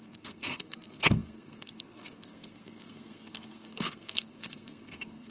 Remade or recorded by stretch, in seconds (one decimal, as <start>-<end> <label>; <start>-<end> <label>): 0.0-5.3 remade